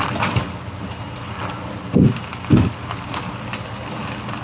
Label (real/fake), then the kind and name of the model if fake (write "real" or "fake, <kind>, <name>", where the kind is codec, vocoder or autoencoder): real